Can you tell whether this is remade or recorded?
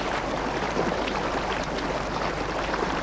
recorded